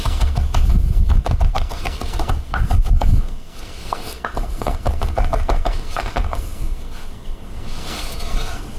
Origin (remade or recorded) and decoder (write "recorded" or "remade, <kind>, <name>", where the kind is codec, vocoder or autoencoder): remade, codec, SNAC